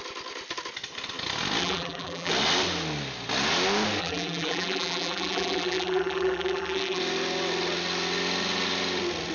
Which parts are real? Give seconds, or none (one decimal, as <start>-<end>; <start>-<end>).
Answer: 0.0-1.6; 2.3-4.0; 7.0-9.3